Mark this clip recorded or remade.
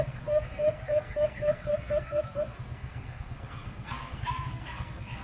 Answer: remade